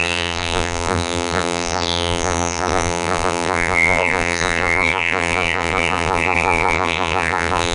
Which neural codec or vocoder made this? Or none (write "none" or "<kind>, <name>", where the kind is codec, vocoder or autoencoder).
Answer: vocoder, BigVGAN v2